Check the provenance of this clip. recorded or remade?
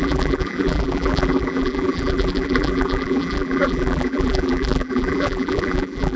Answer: remade